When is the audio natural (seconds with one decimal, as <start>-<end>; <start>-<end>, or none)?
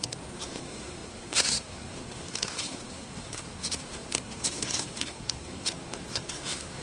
none